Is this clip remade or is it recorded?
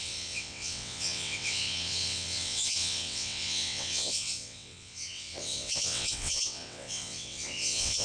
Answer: remade